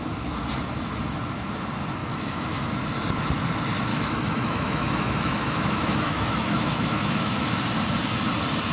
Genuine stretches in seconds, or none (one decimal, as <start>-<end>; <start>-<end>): 0.0-2.0; 2.7-3.9; 7.6-8.7